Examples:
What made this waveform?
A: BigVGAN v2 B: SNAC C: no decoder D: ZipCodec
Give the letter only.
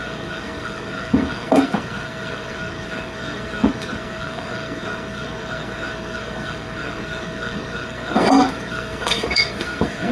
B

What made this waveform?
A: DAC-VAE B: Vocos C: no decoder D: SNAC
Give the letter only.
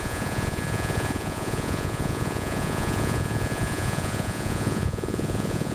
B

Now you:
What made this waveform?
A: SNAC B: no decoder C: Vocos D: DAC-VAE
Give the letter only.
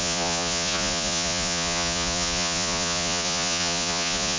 C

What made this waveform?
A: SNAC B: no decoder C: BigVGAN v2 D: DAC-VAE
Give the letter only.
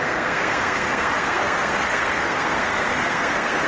A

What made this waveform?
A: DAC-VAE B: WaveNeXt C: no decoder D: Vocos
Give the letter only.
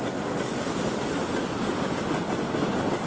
C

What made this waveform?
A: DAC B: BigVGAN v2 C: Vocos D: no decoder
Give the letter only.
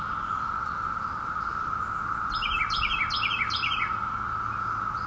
D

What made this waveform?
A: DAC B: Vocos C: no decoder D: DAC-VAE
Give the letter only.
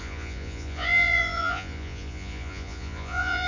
B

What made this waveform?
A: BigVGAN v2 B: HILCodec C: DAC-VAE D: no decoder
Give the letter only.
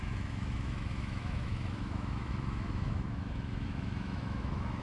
C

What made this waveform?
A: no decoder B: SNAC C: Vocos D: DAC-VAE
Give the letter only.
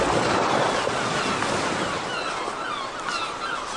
A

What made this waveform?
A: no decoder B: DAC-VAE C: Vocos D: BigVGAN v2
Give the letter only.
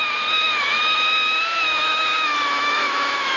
B